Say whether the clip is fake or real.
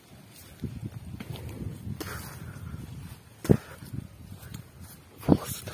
real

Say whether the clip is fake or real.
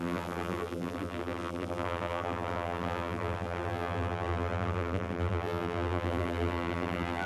fake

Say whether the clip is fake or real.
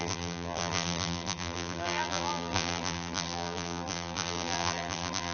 fake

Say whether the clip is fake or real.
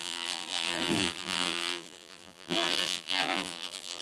fake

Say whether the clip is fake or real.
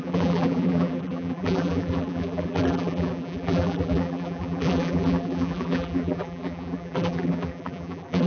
fake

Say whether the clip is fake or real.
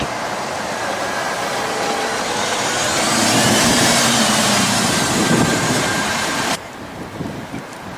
fake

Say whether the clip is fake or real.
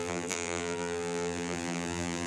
fake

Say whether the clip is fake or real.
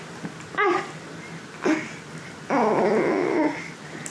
real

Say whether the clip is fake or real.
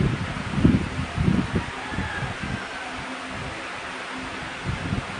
real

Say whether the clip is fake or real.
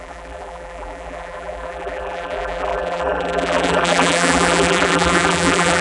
fake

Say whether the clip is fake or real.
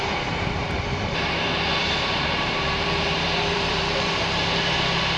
fake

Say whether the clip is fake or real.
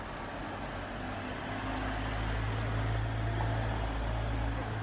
real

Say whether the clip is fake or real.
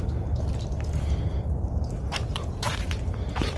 fake